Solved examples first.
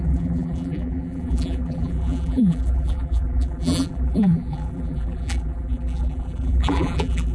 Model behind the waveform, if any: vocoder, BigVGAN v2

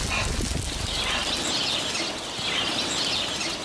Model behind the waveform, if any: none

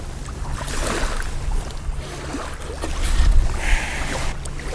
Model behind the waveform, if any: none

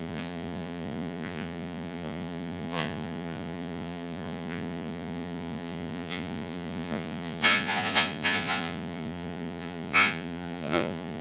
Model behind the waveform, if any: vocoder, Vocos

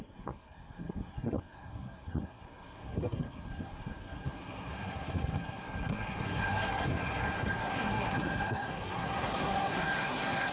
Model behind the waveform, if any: codec, SNAC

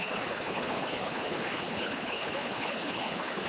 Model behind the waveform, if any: codec, HILCodec